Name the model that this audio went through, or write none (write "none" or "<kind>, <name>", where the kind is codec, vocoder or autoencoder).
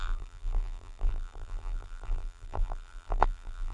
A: vocoder, BigVGAN v2